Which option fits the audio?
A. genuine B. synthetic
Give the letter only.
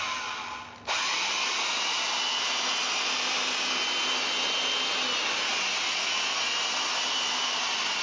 A